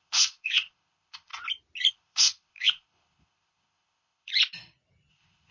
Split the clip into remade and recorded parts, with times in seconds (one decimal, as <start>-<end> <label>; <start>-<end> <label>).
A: 0.0-1.3 remade; 1.3-1.9 recorded; 1.9-4.3 remade; 4.3-5.1 recorded; 5.1-5.5 remade